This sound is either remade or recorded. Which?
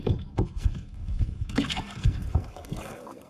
remade